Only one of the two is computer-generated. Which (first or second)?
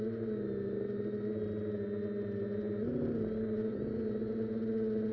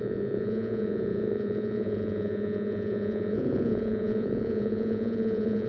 second